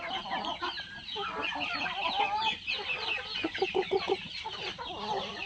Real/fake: real